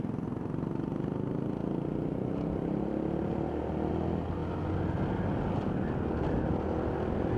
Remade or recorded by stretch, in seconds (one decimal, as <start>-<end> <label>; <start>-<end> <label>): 0.0-7.4 recorded

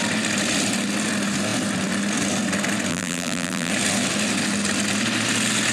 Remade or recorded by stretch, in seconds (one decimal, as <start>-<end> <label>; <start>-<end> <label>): 0.0-2.9 recorded; 2.9-3.7 remade; 3.7-5.7 recorded

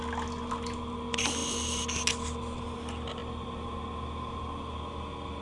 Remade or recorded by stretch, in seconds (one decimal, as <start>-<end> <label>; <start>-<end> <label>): 0.0-5.4 recorded

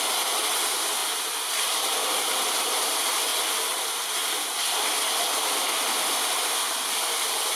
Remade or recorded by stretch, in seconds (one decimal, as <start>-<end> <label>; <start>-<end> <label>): 0.0-7.6 recorded

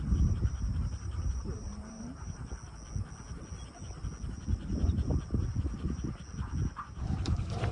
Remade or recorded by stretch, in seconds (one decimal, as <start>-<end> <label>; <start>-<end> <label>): 0.0-2.4 remade; 2.4-7.0 recorded; 7.0-7.7 remade

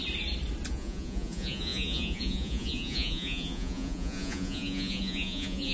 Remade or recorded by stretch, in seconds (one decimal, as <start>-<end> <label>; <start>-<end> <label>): 0.0-0.7 recorded; 0.7-5.7 remade

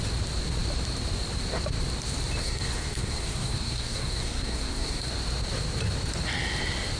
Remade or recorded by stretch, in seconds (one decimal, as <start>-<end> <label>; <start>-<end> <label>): 0.0-2.4 recorded; 2.4-5.1 remade; 5.1-7.0 recorded